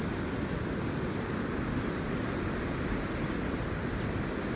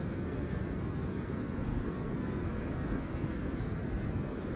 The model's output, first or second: second